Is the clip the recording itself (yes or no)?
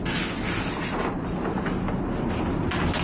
yes